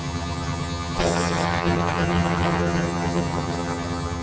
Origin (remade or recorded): remade